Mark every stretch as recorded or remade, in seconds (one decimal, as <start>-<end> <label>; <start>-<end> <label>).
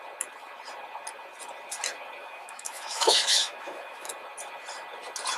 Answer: 0.0-2.2 recorded; 2.2-4.1 remade; 4.1-5.4 recorded